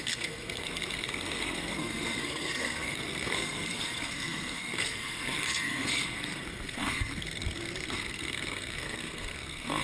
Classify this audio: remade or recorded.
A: remade